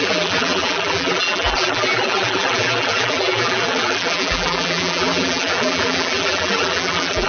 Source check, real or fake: fake